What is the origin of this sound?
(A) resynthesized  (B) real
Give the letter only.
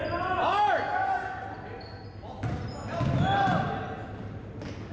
B